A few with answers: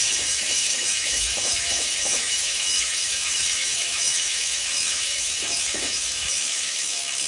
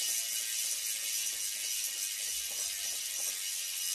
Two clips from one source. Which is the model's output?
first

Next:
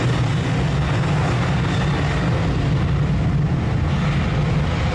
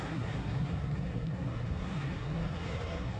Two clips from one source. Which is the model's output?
second